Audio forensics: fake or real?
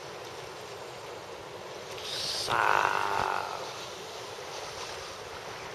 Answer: real